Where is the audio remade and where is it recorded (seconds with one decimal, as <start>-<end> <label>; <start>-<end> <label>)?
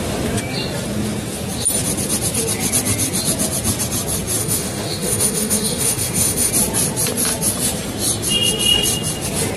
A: 0.0-4.4 recorded; 4.4-6.5 remade; 6.5-9.6 recorded